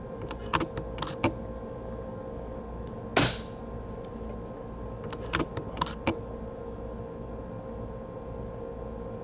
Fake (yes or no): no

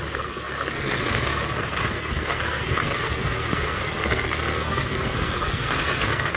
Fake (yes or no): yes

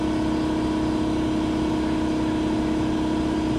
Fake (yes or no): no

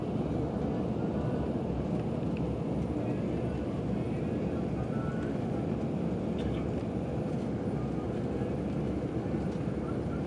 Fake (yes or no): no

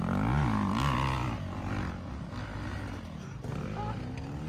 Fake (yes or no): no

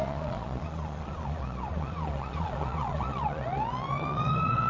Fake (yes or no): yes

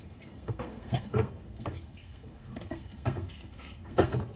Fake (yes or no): yes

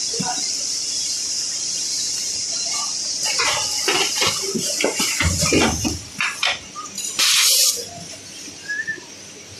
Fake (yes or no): no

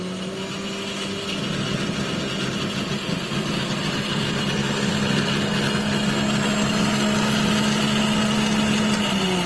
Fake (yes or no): no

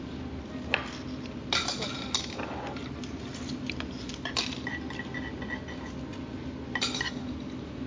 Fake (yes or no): no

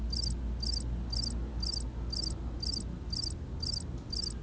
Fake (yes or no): no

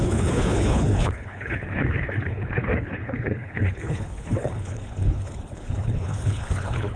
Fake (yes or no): yes